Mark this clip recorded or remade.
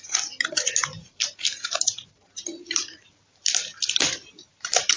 remade